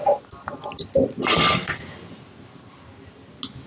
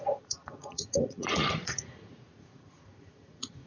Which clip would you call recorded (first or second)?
first